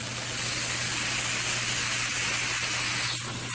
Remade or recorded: recorded